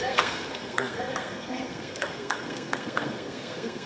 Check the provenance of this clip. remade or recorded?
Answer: remade